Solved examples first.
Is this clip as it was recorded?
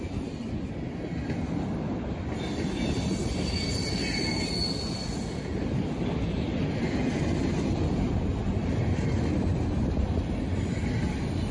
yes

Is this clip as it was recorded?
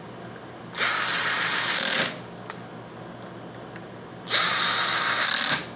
yes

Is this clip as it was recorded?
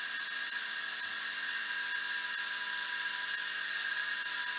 yes